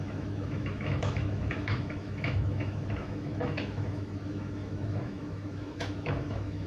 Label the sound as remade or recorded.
remade